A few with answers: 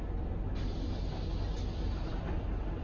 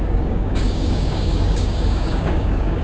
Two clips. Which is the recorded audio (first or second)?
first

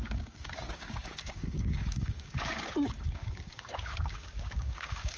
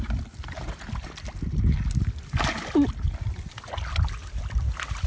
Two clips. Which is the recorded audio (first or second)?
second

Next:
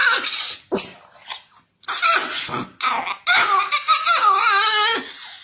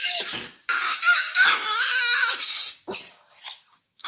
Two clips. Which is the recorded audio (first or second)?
first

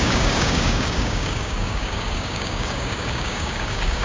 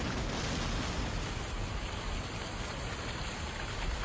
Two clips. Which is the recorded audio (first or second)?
second